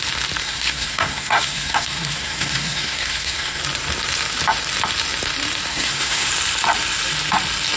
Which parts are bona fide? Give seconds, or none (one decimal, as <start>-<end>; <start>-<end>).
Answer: 0.0-0.4; 3.6-5.7; 6.3-7.8